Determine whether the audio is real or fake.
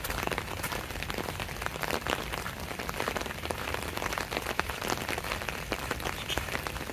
fake